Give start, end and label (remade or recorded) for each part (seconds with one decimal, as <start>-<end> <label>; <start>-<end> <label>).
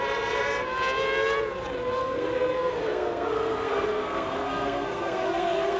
0.0-2.0 recorded; 2.0-5.8 remade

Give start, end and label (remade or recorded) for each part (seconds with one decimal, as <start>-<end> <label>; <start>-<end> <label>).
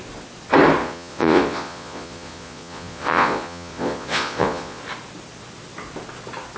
0.0-0.8 recorded; 0.8-4.8 remade; 4.8-6.6 recorded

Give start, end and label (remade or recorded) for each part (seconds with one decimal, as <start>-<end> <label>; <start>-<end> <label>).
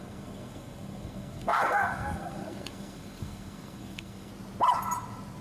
0.0-4.3 remade; 4.3-5.4 recorded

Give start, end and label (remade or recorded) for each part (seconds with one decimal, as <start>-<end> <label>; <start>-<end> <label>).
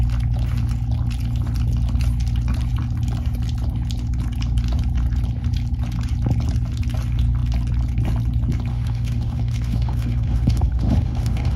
0.0-8.7 recorded; 8.7-11.6 remade